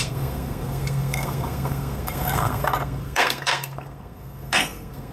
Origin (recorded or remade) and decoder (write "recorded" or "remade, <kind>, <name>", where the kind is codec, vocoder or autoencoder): remade, codec, SNAC